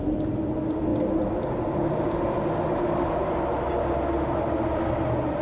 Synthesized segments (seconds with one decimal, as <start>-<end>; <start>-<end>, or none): none